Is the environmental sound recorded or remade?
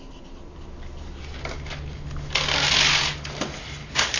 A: recorded